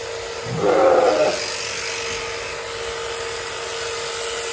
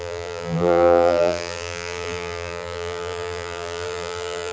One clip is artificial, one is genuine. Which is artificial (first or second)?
second